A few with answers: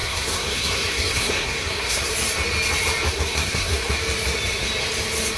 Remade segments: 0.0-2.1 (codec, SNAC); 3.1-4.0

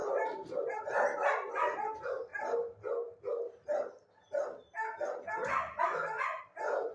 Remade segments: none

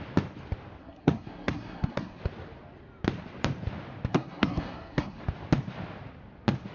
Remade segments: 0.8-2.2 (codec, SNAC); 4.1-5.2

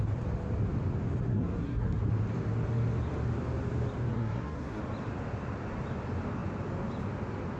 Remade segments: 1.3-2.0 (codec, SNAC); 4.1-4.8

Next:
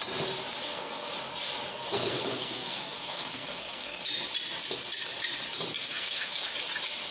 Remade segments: 0.6-1.1 (codec, SNAC); 1.7-4.0; 5.8-6.5

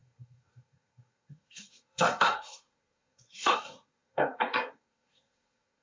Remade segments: 0.0-5.8 (codec, SNAC)